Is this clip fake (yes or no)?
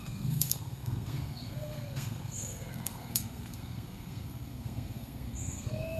yes